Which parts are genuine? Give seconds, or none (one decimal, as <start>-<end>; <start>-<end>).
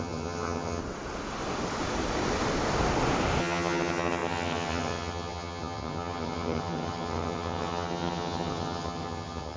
0.8-3.4